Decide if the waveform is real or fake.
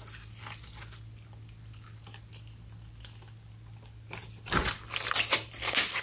real